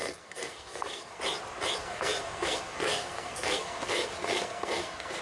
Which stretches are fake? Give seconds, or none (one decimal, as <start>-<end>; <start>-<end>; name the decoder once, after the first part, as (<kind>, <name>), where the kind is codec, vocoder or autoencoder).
0.0-1.2 (codec, SNAC); 1.8-5.2